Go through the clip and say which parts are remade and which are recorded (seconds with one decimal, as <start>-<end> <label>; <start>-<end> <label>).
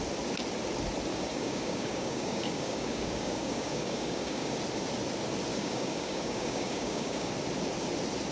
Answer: 0.0-1.1 recorded; 1.1-4.6 remade; 4.6-5.5 recorded; 5.5-7.3 remade; 7.3-8.3 recorded